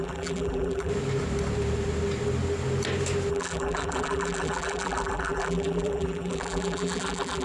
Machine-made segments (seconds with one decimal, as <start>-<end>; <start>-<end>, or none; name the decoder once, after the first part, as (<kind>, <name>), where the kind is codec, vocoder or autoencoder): 0.0-0.9 (vocoder, BigVGAN v2); 3.3-7.4